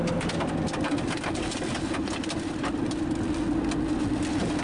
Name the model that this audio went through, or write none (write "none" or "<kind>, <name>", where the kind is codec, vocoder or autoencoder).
none